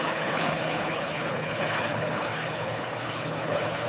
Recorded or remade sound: remade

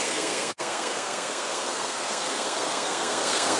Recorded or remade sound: remade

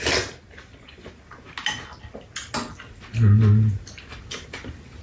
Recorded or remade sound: recorded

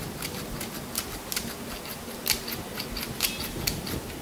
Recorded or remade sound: recorded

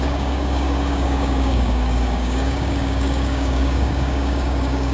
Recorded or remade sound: remade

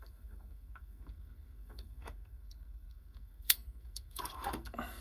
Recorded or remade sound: remade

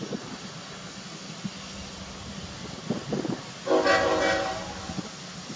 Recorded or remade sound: recorded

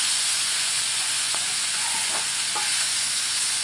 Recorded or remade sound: remade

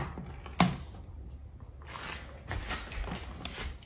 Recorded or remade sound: recorded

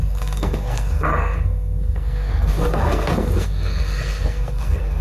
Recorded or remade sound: remade